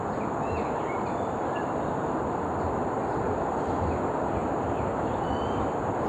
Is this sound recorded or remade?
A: recorded